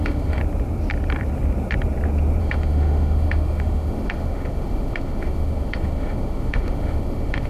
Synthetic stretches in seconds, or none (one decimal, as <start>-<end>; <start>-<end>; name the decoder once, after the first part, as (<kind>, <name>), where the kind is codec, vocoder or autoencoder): 0.0-0.4 (autoencoder, DAC-VAE); 2.4-7.5